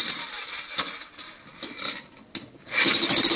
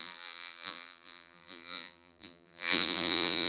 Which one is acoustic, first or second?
first